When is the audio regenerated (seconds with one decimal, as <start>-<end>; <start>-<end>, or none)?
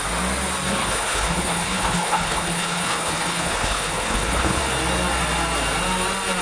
0.8-4.6